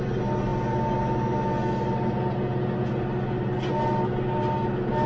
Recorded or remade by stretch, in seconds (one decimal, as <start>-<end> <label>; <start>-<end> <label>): 0.0-5.1 recorded